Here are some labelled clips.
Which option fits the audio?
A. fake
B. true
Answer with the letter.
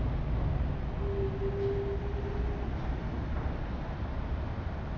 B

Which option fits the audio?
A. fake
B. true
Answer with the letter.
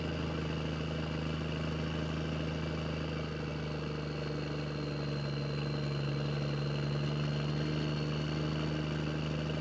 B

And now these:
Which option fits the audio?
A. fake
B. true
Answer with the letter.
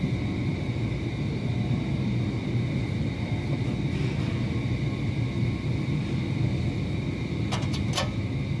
B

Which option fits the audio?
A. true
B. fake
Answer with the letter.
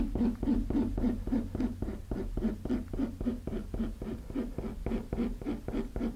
A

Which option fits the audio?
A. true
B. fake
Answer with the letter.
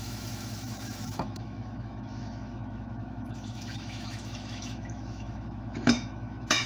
B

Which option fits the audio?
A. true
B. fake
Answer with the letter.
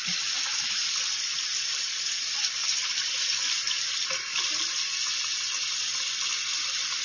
A